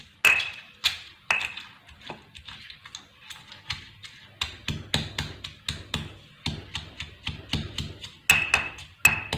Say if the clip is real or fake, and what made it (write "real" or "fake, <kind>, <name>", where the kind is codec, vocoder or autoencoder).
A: real